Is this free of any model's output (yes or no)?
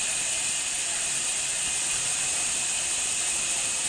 yes